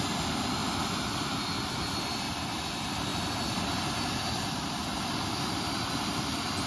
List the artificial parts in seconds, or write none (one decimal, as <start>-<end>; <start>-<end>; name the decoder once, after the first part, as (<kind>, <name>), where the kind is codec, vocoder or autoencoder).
0.0-0.6 (vocoder, BigVGAN v2); 2.2-3.1; 4.3-6.7